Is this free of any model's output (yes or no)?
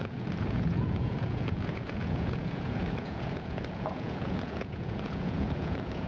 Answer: no